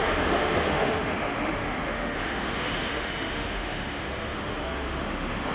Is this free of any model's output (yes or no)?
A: no